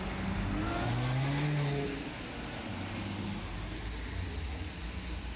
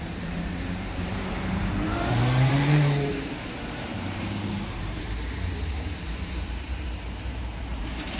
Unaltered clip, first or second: first